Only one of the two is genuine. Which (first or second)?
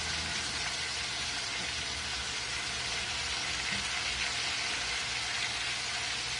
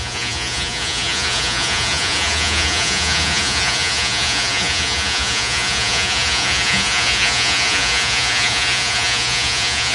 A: first